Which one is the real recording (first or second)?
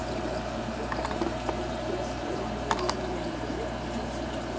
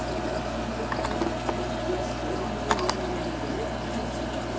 second